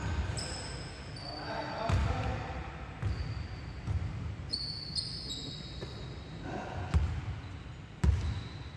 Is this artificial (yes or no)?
no